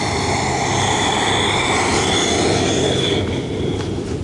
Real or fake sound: real